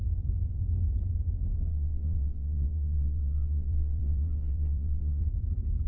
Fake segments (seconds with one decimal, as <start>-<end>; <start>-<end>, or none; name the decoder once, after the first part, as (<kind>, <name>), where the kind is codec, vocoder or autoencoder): 1.7-5.2 (vocoder, WaveNeXt)